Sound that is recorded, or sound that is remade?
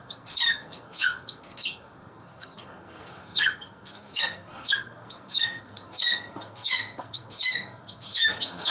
remade